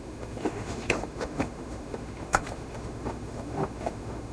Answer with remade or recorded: remade